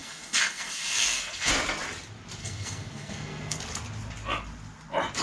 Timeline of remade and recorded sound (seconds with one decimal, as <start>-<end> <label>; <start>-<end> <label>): 0.0-1.5 remade; 1.5-2.4 recorded; 2.4-3.6 remade; 3.6-5.2 recorded